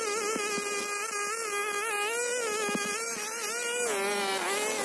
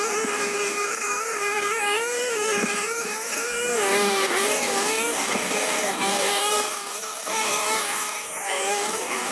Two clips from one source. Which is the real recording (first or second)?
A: first